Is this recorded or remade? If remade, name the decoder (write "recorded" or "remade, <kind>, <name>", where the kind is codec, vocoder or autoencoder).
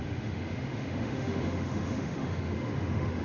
remade, autoencoder, DAC-VAE